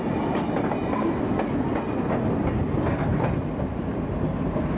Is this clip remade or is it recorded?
recorded